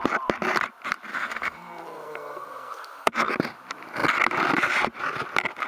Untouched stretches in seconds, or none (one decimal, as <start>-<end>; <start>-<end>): 0.0-1.1; 3.3-5.7